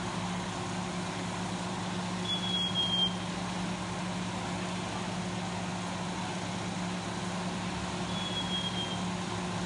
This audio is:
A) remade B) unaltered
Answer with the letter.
B